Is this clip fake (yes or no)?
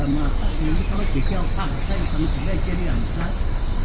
yes